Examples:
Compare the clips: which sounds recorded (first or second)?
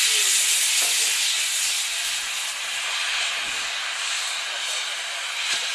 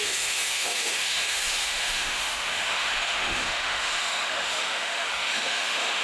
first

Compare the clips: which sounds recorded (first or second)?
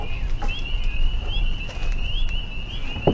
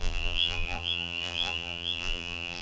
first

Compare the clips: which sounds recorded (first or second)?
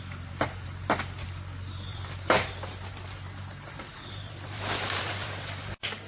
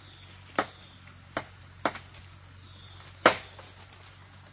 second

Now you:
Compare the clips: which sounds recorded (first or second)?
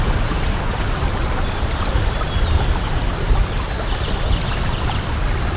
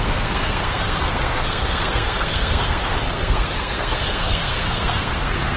first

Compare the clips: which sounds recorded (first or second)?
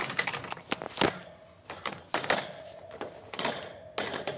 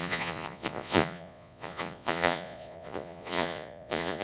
first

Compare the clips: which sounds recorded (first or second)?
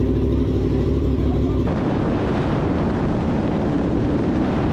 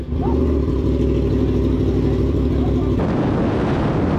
second